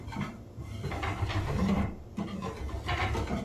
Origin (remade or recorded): recorded